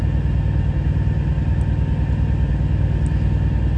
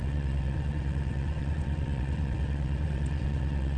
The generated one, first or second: second